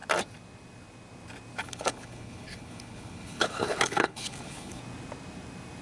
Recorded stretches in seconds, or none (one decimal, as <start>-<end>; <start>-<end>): 0.0-1.6; 4.8-5.8